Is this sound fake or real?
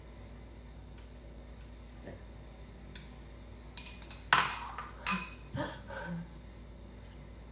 real